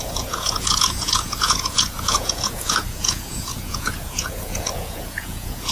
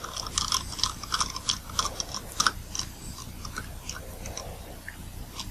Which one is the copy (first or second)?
first